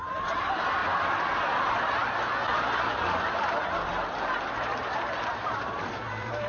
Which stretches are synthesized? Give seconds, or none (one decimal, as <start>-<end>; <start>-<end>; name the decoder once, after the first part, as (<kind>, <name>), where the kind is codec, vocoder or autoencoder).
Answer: 0.0-0.8 (vocoder, BigVGAN v2); 3.5-3.9; 4.8-6.5